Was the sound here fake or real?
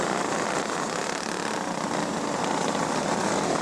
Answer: real